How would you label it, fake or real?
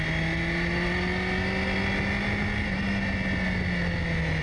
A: real